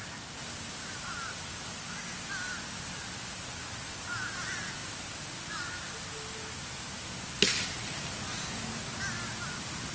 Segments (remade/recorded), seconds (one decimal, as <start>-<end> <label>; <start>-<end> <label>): 0.0-9.9 remade